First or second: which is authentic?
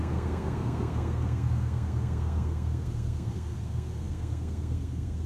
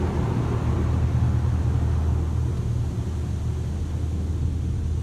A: second